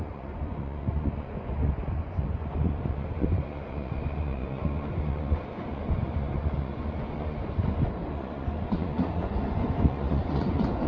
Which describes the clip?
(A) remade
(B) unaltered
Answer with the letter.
A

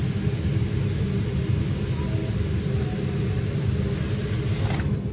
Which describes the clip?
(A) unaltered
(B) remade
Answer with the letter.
A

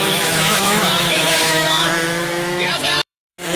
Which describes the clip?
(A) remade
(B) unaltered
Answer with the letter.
A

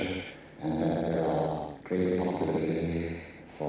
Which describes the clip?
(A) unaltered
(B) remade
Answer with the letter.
A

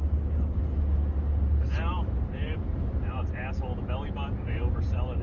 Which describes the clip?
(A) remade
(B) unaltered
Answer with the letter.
B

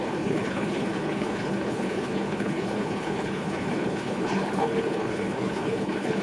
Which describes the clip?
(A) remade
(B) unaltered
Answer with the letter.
A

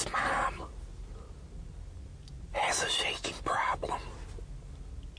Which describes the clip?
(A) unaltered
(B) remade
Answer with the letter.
A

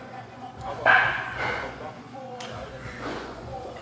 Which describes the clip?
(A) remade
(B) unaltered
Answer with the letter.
A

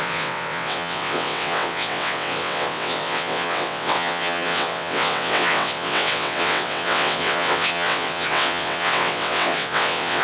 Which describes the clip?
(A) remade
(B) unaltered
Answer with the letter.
A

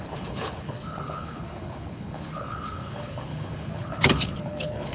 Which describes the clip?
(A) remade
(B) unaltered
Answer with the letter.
A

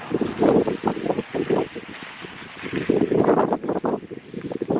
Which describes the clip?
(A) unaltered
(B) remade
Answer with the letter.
A